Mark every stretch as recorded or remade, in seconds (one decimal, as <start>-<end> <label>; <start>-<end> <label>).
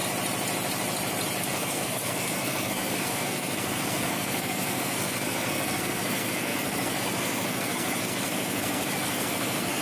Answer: 0.0-1.4 recorded; 1.4-9.8 remade